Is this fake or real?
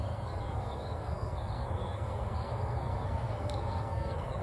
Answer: fake